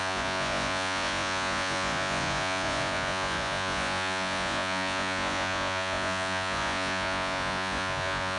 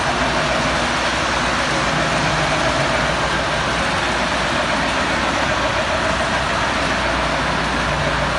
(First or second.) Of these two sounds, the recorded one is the second